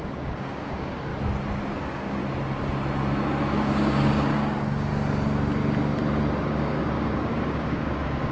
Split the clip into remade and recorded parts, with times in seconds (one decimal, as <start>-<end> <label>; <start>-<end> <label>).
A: 0.0-1.1 remade; 1.1-1.8 recorded; 1.8-2.2 remade; 2.2-3.4 recorded; 3.4-4.9 remade; 4.9-6.4 recorded; 6.4-8.3 remade